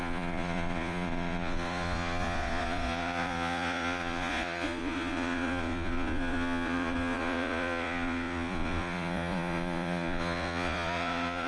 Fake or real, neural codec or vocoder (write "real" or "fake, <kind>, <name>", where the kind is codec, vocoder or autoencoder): fake, vocoder, Vocos